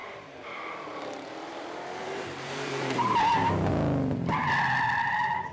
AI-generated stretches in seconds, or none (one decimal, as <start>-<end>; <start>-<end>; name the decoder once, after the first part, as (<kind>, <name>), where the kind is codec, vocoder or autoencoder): 0.0-0.7 (vocoder, BigVGAN v2); 2.0-3.7